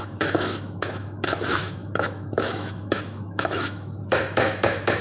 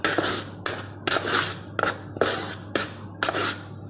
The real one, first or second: second